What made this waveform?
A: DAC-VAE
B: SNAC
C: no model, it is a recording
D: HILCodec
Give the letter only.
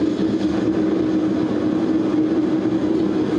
C